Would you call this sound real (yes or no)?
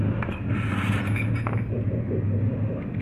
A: yes